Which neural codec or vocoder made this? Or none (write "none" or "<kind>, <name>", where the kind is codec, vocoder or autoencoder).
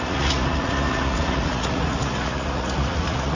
vocoder, Vocos